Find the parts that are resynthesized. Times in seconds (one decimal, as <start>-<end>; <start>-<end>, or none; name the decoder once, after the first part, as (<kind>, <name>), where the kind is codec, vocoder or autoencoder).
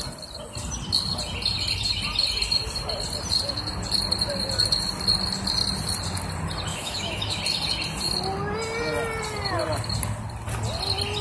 6.7-7.4 (autoencoder, DAC-VAE)